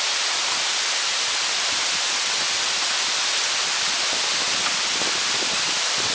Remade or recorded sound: recorded